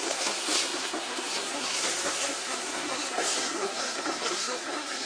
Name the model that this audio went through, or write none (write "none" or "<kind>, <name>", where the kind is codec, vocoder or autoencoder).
codec, SNAC